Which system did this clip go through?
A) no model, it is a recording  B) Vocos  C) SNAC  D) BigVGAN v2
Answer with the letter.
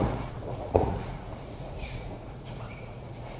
B